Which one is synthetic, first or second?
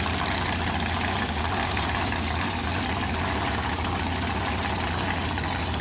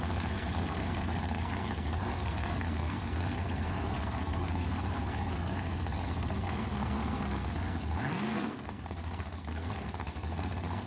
second